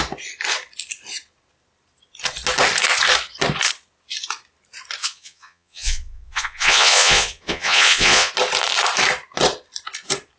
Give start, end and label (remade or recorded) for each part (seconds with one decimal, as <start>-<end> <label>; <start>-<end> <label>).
0.0-5.0 recorded; 5.0-8.3 remade; 8.3-10.4 recorded